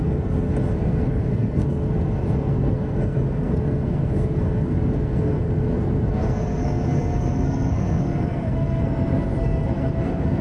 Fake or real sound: fake